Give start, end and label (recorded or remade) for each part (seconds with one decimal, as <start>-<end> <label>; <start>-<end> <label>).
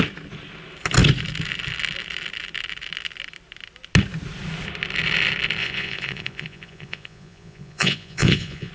0.0-5.6 recorded; 5.6-8.7 remade